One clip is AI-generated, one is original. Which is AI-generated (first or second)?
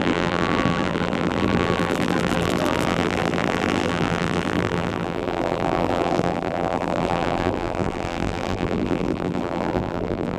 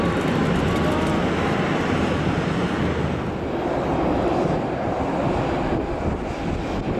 first